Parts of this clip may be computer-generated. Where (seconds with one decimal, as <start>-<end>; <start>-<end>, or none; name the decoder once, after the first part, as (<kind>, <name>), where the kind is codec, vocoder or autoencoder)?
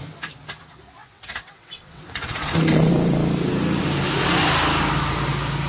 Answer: 1.0-2.9 (vocoder, WaveNeXt)